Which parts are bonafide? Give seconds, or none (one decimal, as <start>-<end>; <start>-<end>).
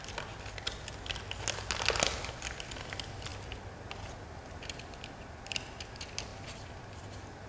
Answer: 0.0-7.5